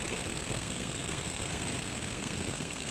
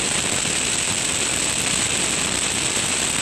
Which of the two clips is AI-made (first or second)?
first